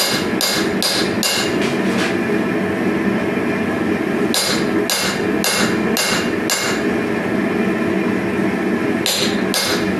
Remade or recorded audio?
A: recorded